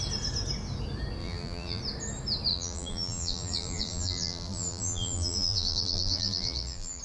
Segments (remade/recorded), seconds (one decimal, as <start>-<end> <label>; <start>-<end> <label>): 0.0-1.2 recorded; 1.2-1.8 remade; 1.8-2.5 recorded; 2.5-7.0 remade